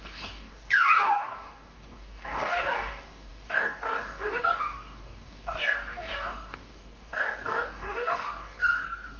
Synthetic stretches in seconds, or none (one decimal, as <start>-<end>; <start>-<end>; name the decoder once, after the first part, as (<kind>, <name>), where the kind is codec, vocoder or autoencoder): 0.0-9.2 (codec, DAC)